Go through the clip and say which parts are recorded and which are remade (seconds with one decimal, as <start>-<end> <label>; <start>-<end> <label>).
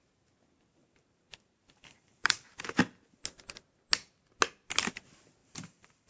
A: 0.0-0.8 recorded; 0.8-2.8 remade; 2.8-5.4 recorded; 5.4-6.1 remade